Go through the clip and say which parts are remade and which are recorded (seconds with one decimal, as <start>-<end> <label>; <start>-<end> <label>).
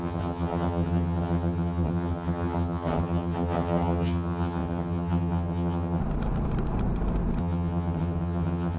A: 0.0-6.0 remade; 6.0-7.4 recorded; 7.4-8.8 remade